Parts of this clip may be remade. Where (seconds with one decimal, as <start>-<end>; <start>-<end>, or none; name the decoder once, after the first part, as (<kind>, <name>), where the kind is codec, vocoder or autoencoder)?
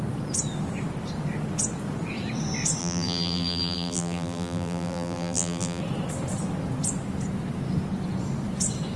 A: 2.8-5.8 (vocoder, BigVGAN v2)